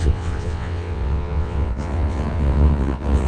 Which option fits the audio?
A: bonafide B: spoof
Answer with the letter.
B